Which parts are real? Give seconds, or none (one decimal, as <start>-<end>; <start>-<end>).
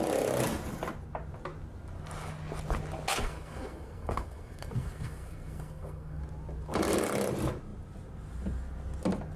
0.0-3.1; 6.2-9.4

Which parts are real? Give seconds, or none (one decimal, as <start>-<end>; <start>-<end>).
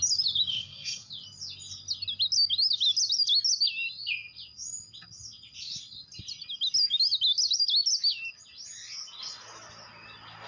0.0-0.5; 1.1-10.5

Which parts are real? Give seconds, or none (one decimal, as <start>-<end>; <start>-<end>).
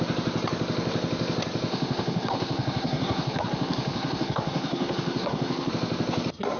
0.0-1.7; 5.7-6.6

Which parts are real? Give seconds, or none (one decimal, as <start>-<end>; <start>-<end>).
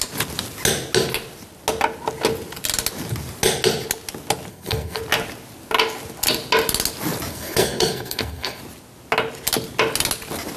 0.0-4.5; 5.0-7.3; 8.6-10.6